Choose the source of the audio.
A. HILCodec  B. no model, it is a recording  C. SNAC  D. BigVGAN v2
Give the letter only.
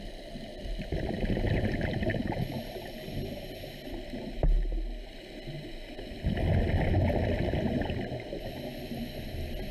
B